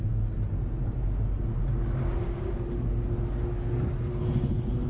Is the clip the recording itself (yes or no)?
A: yes